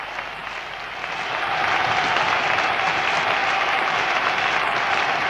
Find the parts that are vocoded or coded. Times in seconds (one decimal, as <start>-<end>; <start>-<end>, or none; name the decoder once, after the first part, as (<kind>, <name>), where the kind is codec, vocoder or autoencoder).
3.4-4.3 (vocoder, BigVGAN v2)